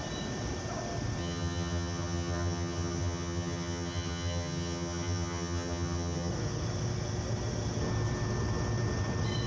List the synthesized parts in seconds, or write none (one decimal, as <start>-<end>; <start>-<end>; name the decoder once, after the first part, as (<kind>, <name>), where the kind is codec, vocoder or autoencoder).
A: 1.2-6.3 (vocoder, HiFi-GAN)